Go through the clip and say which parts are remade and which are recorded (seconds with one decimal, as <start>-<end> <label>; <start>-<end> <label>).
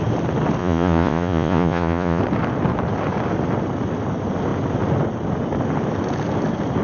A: 0.0-0.6 recorded; 0.6-2.2 remade; 2.2-6.8 recorded